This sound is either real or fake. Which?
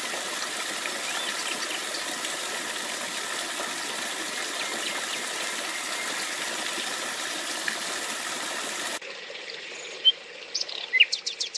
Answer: real